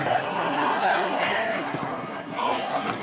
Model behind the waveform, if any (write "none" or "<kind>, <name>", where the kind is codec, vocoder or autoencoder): codec, SNAC